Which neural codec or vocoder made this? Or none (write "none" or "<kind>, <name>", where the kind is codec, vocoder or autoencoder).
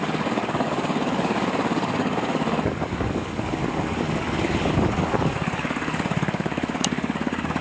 codec, DAC